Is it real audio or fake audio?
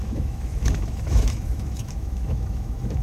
fake